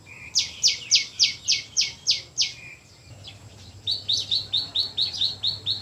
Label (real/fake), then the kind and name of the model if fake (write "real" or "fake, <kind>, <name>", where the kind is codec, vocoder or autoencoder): real